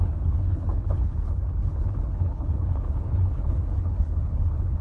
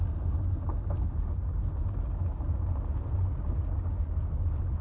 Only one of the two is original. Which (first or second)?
second